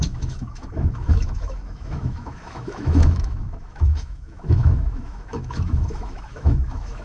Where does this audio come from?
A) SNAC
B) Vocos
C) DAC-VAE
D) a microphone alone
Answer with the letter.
C